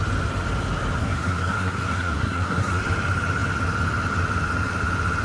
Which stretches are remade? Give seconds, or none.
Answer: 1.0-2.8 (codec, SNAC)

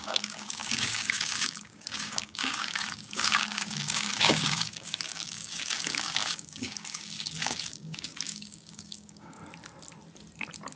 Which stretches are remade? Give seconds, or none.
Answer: 0.0-9.4 (codec, DAC)